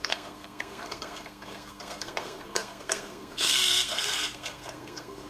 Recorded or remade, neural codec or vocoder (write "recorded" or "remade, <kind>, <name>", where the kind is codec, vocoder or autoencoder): remade, codec, SNAC